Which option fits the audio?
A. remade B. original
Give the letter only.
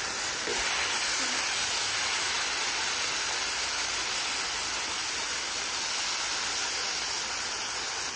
B